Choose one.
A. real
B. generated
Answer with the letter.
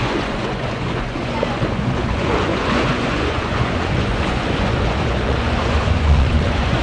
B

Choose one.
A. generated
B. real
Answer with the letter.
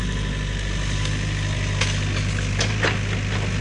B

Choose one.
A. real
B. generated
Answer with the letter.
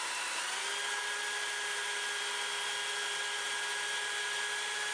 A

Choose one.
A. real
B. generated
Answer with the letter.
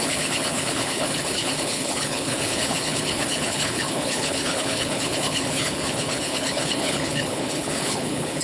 B